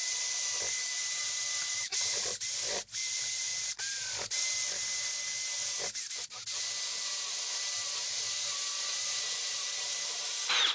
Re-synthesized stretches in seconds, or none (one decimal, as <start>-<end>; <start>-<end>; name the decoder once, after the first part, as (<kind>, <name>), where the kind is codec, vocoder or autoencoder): 0.0-3.5 (vocoder, BigVGAN v2); 8.3-10.7